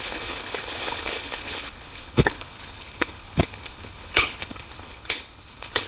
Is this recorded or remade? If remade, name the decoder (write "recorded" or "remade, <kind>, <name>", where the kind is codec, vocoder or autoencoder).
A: remade, codec, HILCodec